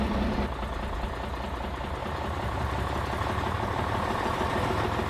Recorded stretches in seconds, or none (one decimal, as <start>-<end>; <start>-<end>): 0.0-2.0